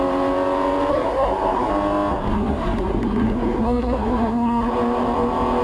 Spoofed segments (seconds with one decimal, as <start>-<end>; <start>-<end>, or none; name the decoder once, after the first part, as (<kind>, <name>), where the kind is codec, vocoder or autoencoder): 0.9-1.7 (codec, SNAC); 2.3-4.7